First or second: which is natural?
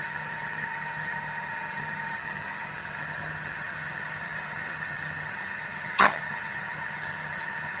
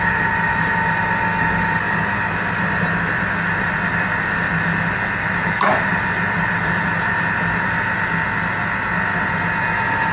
second